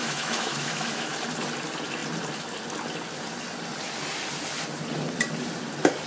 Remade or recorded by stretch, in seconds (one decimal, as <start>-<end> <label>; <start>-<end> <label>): 0.0-1.1 remade; 1.1-6.1 recorded